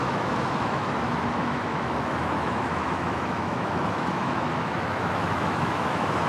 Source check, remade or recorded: remade